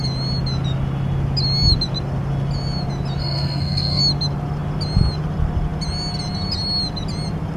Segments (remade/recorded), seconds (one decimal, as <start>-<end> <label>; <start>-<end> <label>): 0.0-3.2 recorded; 3.2-4.0 remade; 4.0-7.6 recorded